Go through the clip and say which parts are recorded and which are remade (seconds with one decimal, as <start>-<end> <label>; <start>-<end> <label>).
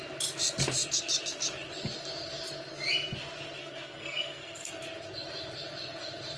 0.0-3.6 recorded; 3.6-4.7 remade; 4.7-6.4 recorded